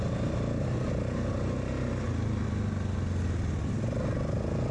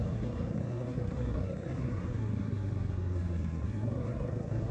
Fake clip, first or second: second